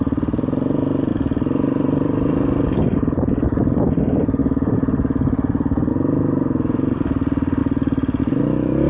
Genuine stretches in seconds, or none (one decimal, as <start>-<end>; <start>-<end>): 4.4-5.9; 7.6-8.2